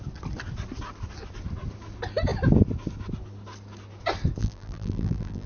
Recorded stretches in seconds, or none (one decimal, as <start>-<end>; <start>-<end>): 0.0-4.4